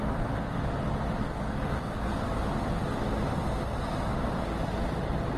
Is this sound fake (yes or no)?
no